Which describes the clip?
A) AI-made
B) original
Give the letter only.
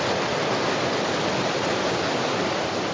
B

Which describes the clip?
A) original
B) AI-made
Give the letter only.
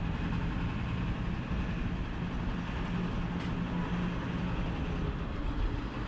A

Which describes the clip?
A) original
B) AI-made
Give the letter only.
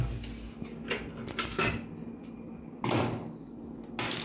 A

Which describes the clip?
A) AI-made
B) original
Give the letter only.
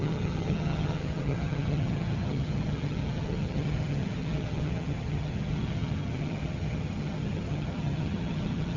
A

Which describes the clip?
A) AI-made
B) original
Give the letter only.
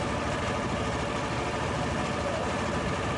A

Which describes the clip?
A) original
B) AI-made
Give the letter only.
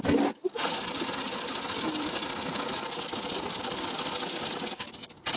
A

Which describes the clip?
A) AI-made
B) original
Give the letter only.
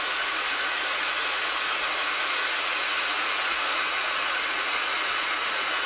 A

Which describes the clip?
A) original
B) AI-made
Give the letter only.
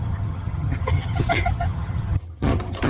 B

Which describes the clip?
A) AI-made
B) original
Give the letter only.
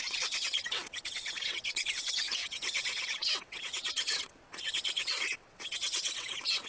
A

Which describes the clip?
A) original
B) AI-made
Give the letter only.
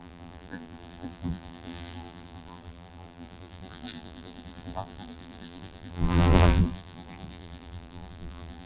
B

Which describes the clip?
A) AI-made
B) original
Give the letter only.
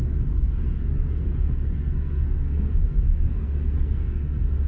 A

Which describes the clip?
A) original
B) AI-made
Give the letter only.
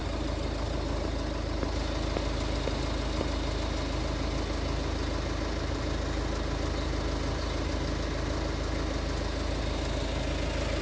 A